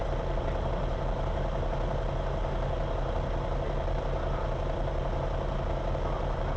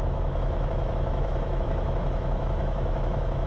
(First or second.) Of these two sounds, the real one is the first